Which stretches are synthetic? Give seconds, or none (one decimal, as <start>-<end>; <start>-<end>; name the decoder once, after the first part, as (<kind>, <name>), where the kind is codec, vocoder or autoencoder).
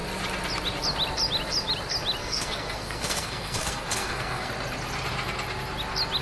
2.2-4.5 (codec, SNAC)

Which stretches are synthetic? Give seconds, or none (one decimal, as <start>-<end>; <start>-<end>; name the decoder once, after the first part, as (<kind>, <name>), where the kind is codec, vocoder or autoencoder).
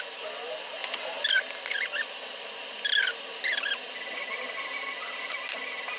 none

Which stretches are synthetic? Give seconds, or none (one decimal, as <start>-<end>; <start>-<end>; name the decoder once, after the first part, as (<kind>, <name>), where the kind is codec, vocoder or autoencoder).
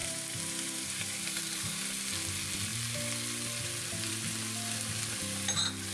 0.0-1.8 (vocoder, BigVGAN v2)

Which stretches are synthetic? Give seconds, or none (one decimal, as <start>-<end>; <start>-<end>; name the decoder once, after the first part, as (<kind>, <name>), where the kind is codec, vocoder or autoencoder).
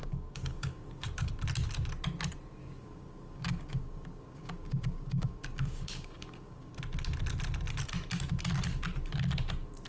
0.0-1.3 (codec, DAC); 2.6-6.7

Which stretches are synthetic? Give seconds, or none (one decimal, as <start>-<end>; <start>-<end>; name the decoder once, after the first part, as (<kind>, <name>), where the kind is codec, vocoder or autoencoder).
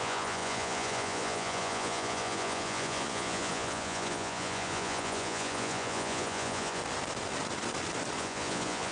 0.0-6.8 (vocoder, Vocos); 8.2-8.9